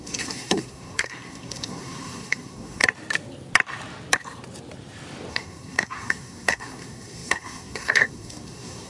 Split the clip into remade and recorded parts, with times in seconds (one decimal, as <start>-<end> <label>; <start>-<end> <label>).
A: 0.0-2.8 remade; 2.8-5.3 recorded; 5.3-8.9 remade